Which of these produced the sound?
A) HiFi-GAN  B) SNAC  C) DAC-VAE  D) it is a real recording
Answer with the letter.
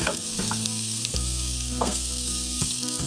B